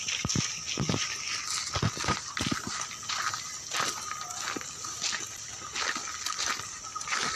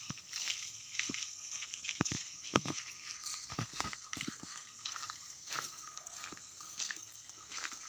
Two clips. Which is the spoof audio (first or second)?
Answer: second